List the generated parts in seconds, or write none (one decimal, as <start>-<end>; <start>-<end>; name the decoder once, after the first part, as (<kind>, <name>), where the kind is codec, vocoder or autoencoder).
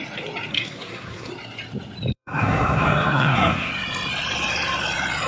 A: 0.5-1.3 (codec, SNAC); 2.1-3.7